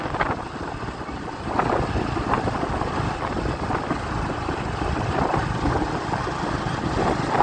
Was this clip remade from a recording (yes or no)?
no